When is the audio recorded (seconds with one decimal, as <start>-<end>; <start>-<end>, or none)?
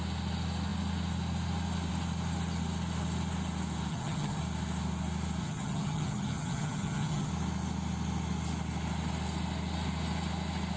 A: 0.0-3.9; 4.4-5.4; 7.3-10.8